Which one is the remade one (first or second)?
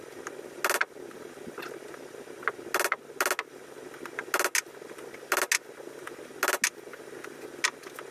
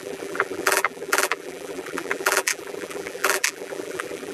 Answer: second